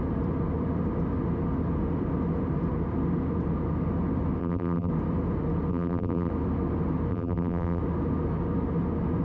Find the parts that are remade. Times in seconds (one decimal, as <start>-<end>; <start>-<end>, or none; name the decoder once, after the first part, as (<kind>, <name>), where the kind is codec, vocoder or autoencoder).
4.4-4.9 (vocoder, BigVGAN v2); 5.7-6.3; 7.1-7.8